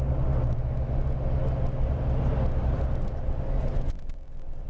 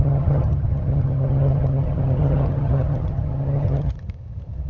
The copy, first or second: second